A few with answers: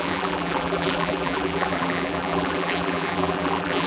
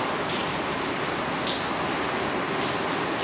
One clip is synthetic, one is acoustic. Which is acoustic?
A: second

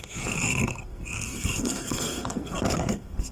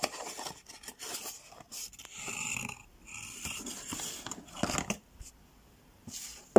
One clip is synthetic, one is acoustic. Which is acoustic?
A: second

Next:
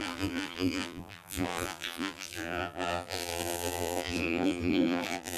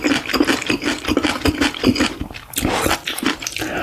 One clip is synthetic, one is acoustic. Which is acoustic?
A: second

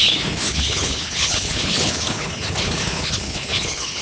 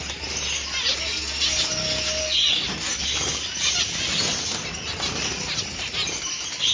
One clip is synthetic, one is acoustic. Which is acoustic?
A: second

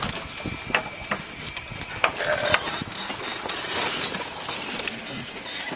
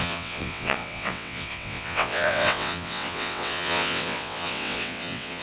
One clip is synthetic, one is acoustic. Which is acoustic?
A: first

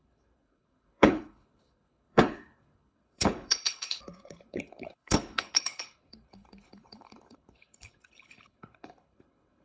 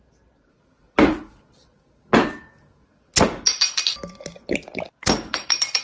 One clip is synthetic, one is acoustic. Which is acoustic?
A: second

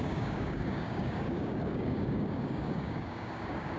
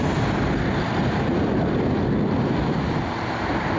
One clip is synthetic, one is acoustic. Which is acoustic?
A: second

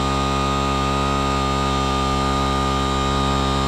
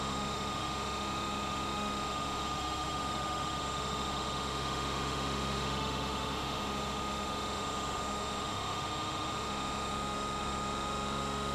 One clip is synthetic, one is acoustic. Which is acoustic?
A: first